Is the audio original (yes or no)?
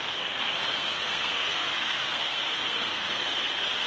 no